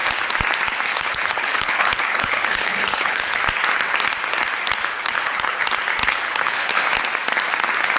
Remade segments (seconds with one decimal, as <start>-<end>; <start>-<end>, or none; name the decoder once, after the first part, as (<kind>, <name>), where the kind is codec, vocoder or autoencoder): 0.9-3.4 (codec, HILCodec); 4.9-5.6; 6.0-6.7